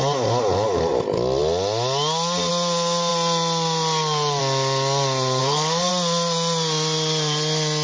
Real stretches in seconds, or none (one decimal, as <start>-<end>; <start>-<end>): 0.0-5.4; 5.9-7.8